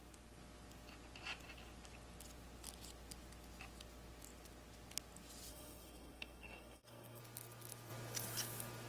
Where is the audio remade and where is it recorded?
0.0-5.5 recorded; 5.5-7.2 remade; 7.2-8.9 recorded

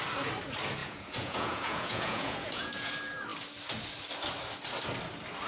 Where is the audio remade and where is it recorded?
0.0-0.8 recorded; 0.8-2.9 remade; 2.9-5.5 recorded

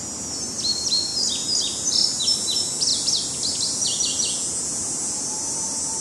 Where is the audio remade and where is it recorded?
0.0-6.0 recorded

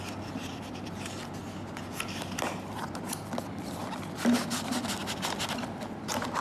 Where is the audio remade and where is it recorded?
0.0-1.2 remade; 1.2-1.9 recorded; 1.9-6.4 remade

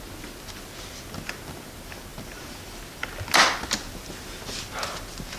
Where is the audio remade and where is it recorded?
0.0-5.4 recorded

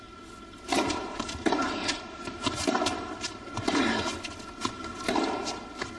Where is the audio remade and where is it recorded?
0.0-4.1 remade; 4.1-4.7 recorded; 4.7-6.0 remade